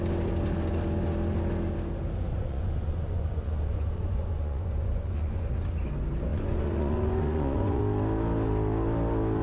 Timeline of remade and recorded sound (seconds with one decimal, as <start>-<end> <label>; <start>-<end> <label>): 0.0-2.3 recorded; 2.3-5.5 remade; 5.5-6.3 recorded; 6.3-7.8 remade; 7.8-9.4 recorded